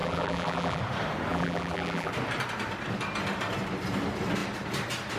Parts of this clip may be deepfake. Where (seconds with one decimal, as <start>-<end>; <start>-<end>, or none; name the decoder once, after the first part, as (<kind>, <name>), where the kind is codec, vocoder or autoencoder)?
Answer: 0.0-0.8 (vocoder, BigVGAN v2); 1.3-2.1